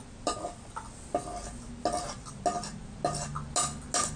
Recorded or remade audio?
recorded